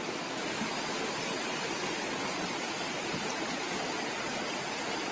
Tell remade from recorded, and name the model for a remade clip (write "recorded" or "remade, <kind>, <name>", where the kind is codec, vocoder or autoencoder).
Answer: recorded